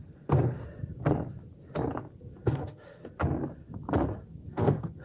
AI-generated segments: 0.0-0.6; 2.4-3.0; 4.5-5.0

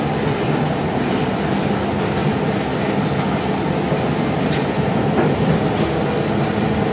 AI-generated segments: none

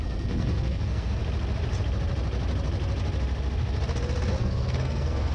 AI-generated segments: 0.0-1.2; 4.4-5.3

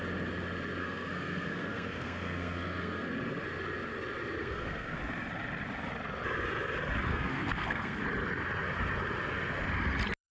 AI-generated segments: 0.8-3.1; 4.4-5.0; 7.1-8.0

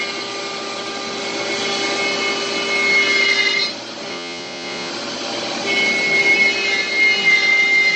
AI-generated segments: 4.1-4.9

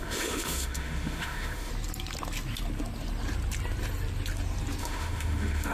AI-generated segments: 0.0-1.7; 4.8-5.7

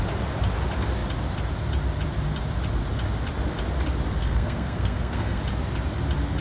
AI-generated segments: 4.2-5.4

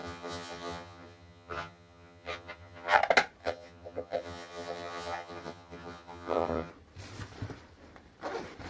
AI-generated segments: 0.0-3.0; 3.4-6.7